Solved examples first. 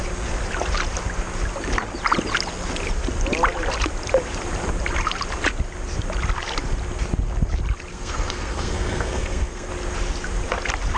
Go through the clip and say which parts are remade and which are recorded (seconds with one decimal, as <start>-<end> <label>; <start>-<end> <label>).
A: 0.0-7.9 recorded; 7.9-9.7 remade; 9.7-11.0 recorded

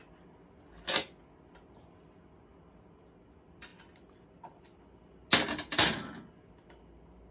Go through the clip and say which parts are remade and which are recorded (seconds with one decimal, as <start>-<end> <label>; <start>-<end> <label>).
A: 0.0-7.3 recorded

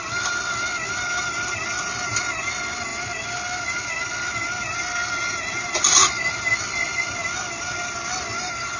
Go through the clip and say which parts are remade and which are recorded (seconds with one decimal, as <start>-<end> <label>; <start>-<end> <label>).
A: 0.0-8.8 recorded

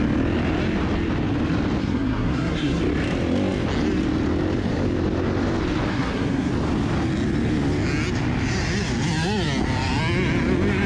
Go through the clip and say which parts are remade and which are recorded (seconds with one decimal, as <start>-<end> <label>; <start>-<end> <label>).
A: 0.0-1.8 recorded; 1.8-2.8 remade; 2.8-5.9 recorded; 5.9-6.5 remade; 6.5-10.9 recorded

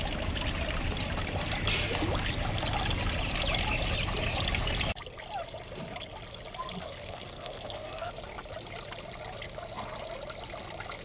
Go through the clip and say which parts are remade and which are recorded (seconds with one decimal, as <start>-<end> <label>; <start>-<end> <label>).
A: 0.0-6.8 recorded; 6.8-8.1 remade; 8.1-11.0 recorded

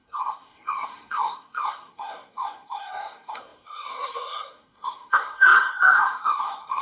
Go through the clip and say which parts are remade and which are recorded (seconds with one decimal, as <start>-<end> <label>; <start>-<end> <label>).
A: 0.0-6.8 remade